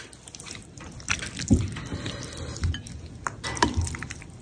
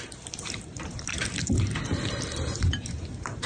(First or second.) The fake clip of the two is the second